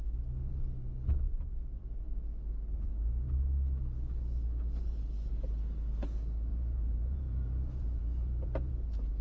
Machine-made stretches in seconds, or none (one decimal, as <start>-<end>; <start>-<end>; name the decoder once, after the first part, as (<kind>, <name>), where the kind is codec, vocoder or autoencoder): 6.5-8.7 (vocoder, Vocos)